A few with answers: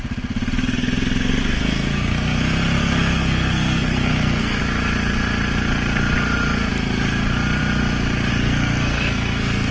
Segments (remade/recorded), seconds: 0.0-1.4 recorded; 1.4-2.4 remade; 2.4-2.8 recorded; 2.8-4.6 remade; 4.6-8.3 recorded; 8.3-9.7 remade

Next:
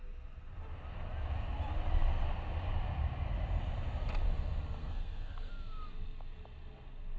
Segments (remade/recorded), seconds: 0.0-4.8 recorded; 4.8-5.5 remade; 5.5-7.2 recorded

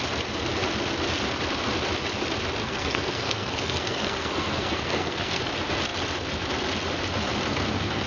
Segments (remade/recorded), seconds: 0.0-2.6 recorded; 2.6-5.4 remade; 5.4-7.5 recorded; 7.5-8.1 remade

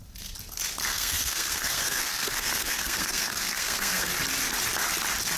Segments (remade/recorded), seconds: 0.0-0.9 recorded; 0.9-4.1 remade; 4.1-5.4 recorded

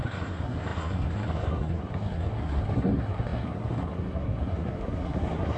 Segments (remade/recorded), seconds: 0.0-5.6 remade

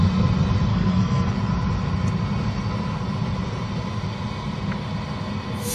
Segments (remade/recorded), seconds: 0.0-0.7 recorded; 0.7-1.3 remade; 1.3-5.7 recorded

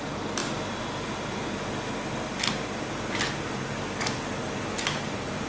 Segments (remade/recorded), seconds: 0.0-5.5 recorded